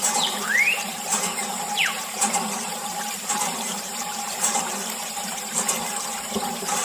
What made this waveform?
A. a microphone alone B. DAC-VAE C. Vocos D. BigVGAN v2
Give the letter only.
D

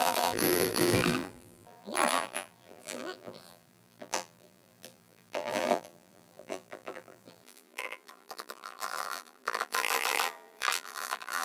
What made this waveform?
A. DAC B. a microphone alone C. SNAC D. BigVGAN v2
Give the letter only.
D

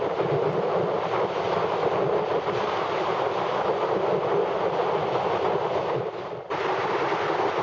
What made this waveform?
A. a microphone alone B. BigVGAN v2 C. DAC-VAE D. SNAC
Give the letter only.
A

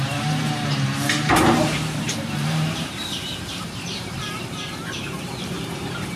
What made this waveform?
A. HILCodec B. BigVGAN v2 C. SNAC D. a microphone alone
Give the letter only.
B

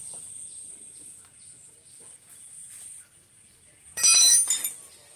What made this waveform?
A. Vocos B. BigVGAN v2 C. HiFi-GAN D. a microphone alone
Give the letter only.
D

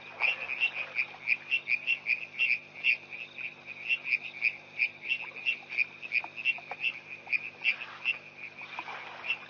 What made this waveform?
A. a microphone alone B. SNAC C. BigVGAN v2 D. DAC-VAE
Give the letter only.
A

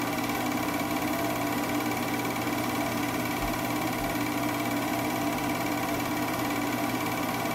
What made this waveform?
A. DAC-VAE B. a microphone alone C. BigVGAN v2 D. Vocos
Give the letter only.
B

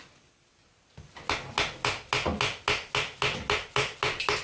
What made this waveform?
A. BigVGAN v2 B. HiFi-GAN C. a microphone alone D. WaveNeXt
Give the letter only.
C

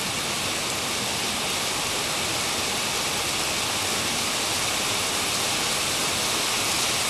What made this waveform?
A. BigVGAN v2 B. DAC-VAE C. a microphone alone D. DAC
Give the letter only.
C